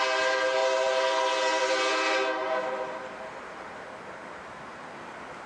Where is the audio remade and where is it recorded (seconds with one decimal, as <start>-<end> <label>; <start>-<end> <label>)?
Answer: 0.0-0.6 recorded; 0.6-3.8 remade; 3.8-5.5 recorded